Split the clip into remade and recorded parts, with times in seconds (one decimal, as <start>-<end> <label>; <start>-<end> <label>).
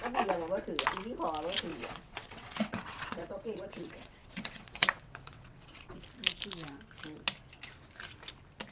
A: 0.0-1.7 recorded; 1.7-6.0 remade; 6.0-8.7 recorded